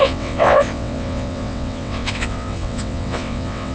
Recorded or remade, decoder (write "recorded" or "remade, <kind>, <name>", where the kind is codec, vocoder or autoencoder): remade, vocoder, WaveNeXt